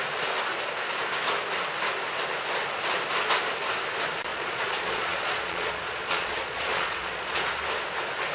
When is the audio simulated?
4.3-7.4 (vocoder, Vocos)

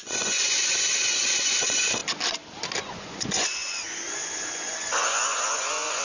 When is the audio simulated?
0.0-2.0 (vocoder, Vocos); 2.8-6.0

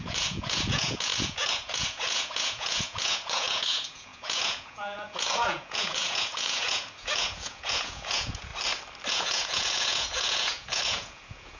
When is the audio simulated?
0.0-8.5 (vocoder, Vocos); 9.1-11.6